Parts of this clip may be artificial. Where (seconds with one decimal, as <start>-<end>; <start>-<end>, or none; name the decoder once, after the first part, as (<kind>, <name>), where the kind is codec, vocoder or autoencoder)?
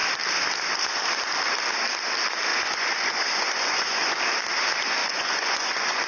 2.5-4.2 (vocoder, Vocos); 5.0-6.1